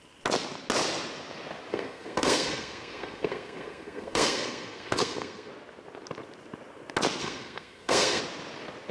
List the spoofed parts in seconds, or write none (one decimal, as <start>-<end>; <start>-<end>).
1.7-5.5; 7.2-8.2